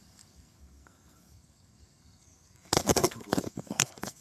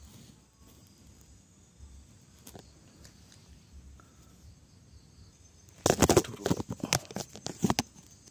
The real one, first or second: second